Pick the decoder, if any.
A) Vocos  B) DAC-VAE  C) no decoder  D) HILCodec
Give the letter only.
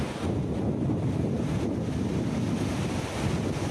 C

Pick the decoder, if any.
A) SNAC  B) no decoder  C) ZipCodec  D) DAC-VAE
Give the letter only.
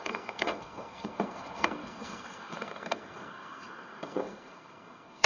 A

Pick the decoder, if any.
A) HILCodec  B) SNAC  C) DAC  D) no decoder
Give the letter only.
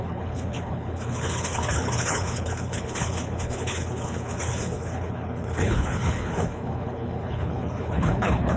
A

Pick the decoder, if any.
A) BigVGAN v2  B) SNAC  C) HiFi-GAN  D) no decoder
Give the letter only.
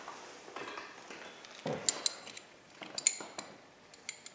D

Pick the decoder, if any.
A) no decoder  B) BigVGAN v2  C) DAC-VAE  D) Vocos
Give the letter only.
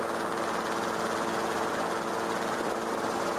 A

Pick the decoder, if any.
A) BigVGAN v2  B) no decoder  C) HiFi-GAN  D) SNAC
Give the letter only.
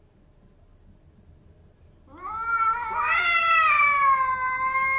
B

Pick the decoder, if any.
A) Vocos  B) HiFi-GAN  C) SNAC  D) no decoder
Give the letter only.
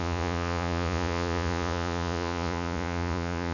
A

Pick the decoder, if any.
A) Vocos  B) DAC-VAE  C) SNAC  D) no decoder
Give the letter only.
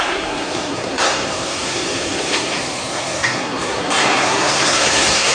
C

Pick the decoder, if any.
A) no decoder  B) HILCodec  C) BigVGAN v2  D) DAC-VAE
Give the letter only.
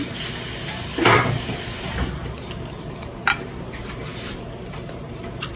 C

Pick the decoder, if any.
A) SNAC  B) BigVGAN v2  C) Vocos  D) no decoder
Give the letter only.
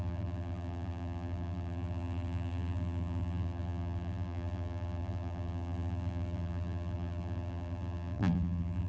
B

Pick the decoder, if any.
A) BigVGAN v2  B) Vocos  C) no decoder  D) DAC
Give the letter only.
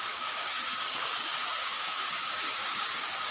D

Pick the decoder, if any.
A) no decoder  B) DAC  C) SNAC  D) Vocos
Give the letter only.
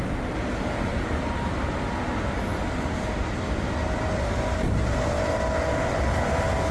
A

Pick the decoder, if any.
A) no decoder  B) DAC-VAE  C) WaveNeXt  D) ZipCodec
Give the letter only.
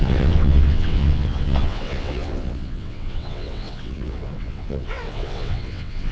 C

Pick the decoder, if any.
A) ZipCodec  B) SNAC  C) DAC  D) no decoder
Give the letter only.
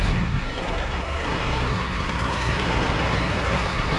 B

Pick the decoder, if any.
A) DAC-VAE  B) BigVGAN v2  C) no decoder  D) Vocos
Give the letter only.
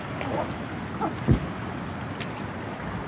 C